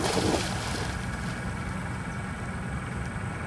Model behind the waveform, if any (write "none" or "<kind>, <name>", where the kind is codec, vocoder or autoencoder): none